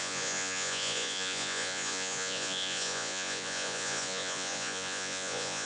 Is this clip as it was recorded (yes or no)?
no